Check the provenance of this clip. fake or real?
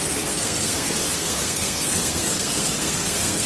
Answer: fake